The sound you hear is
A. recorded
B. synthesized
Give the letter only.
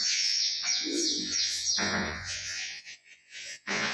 B